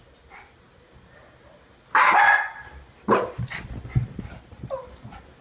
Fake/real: real